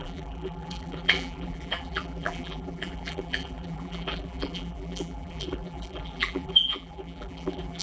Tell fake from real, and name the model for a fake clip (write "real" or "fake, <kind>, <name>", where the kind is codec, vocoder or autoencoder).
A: fake, vocoder, BigVGAN v2